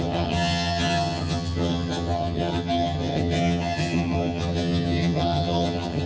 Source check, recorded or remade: remade